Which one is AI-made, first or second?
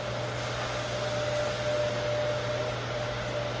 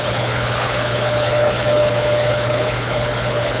second